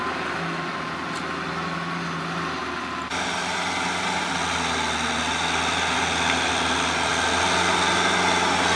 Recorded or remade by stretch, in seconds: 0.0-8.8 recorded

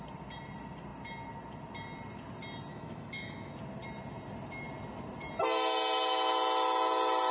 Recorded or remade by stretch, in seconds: 0.0-2.7 recorded; 2.7-3.5 remade; 3.5-7.3 recorded